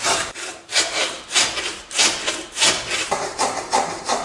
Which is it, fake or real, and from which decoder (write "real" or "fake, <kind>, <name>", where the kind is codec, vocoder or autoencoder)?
fake, vocoder, BigVGAN v2